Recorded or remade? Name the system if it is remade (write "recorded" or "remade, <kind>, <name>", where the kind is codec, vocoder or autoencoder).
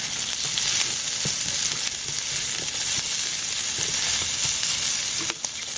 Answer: recorded